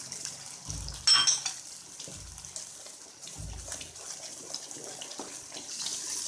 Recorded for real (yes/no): yes